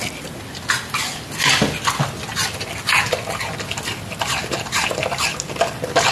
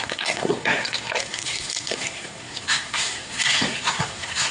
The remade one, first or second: second